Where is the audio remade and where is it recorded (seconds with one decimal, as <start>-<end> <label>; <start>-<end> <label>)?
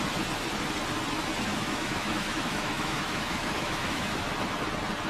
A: 0.0-1.5 recorded; 1.5-4.2 remade; 4.2-5.1 recorded